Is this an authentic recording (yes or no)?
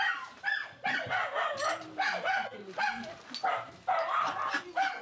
yes